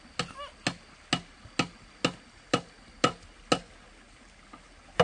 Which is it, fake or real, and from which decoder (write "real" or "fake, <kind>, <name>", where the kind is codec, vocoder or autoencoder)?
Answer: real